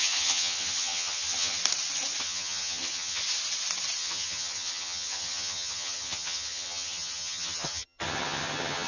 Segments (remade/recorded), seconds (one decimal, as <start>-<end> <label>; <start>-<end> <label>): 0.0-1.6 remade; 1.6-2.2 recorded; 2.2-3.2 remade; 3.2-4.0 recorded; 4.0-8.9 remade

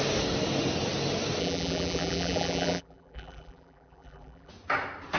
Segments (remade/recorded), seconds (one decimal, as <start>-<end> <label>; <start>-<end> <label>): 0.0-1.4 recorded; 1.4-4.5 remade; 4.5-5.2 recorded